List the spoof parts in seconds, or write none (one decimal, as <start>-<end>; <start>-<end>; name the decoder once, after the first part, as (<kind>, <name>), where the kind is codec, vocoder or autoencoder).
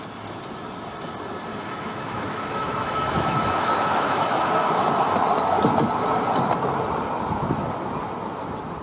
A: 1.5-4.8 (autoencoder, DAC-VAE)